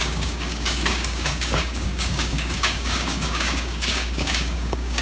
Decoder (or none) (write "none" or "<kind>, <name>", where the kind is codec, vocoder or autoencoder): codec, DAC